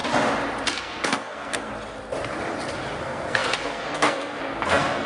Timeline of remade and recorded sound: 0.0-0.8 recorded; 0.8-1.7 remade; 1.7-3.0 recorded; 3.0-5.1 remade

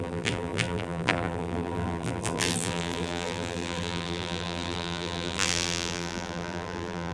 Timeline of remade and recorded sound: 0.0-7.1 remade

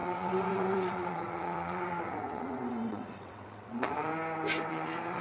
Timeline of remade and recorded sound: 0.0-4.1 remade; 4.1-4.7 recorded; 4.7-5.2 remade

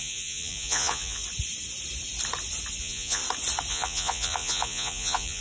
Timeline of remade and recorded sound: 0.0-1.2 remade; 1.2-2.8 recorded; 2.8-3.2 remade; 3.2-3.7 recorded; 3.7-5.4 remade

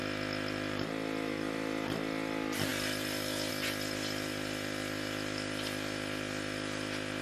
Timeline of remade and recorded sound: 0.0-7.2 recorded

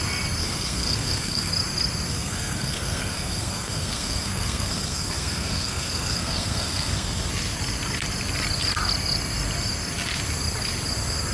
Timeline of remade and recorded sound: 0.0-0.4 recorded; 0.4-1.5 remade; 1.5-2.1 recorded; 2.1-7.3 remade; 7.3-11.3 recorded

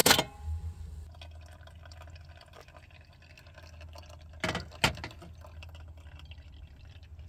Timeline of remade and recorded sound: 0.0-7.3 recorded

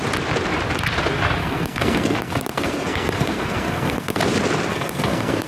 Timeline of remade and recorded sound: 0.0-1.4 recorded; 1.4-4.2 remade; 4.2-4.7 recorded; 4.7-5.5 remade